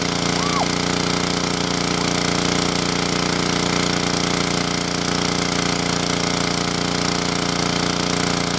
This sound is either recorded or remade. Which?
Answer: recorded